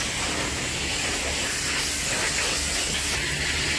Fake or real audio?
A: real